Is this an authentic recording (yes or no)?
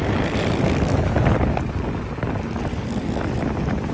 yes